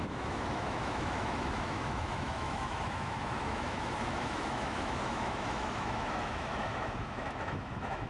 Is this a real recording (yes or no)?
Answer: no